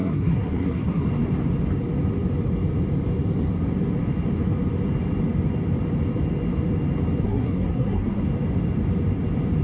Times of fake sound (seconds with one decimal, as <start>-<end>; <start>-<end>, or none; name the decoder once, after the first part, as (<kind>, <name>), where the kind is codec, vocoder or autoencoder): 0.0-1.1 (codec, SNAC); 7.2-8.2